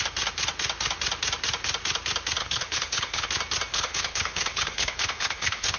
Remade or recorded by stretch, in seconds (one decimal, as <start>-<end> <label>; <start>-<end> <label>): 0.0-2.4 recorded; 2.4-3.3 remade; 3.3-3.7 recorded; 3.7-5.8 remade